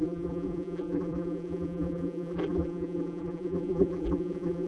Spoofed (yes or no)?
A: yes